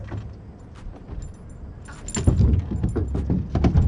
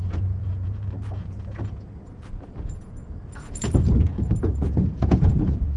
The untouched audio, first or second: first